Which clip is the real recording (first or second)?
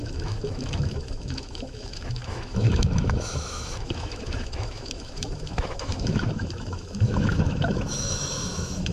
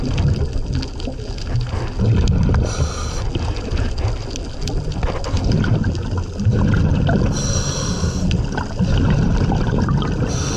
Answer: second